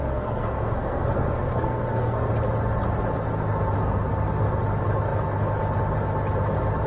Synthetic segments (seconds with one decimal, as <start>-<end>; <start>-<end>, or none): 0.0-2.3; 3.8-4.6

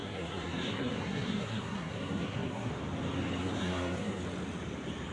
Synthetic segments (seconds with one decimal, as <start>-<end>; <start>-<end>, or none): 0.0-2.7; 3.4-4.2

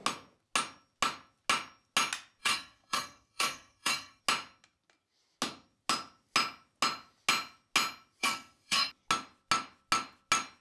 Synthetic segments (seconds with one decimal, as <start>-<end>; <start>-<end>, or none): 2.4-4.2; 8.2-8.9

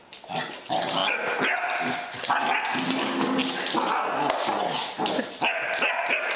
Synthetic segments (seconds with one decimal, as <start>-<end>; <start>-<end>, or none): none

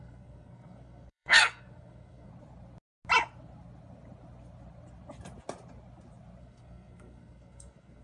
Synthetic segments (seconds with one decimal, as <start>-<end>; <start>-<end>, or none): 0.0-2.3; 6.4-8.0

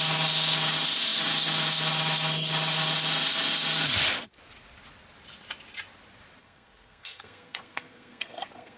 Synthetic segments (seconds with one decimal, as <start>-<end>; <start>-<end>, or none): 6.4-8.8